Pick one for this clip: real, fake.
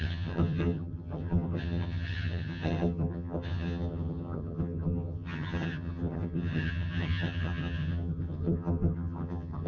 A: fake